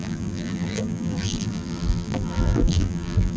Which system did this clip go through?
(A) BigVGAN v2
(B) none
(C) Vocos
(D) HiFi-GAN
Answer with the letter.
A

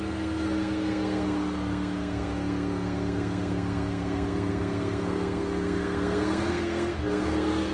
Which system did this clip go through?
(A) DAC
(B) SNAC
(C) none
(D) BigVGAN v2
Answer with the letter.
B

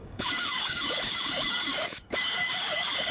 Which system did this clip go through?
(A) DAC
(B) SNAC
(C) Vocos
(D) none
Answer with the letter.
A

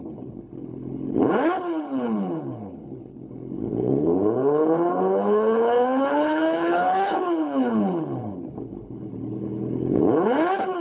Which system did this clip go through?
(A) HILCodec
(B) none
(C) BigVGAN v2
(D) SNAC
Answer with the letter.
A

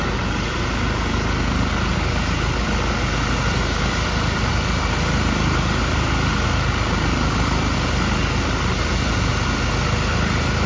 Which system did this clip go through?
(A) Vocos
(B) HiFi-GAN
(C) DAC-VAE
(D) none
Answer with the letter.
D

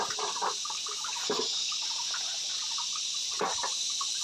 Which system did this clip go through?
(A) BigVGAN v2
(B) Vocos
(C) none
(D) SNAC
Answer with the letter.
A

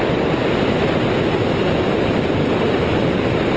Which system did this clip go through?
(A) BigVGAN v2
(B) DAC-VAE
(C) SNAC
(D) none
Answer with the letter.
D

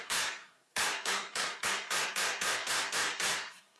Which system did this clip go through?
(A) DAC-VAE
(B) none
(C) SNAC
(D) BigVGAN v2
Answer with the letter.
C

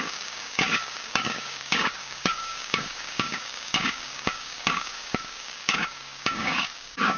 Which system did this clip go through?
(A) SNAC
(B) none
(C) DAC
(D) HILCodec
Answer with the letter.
C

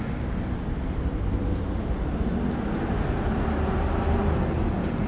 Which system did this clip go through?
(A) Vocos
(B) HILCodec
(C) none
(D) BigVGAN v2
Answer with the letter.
C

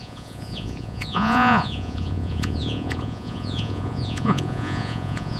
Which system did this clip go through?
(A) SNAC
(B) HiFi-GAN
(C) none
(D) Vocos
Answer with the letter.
D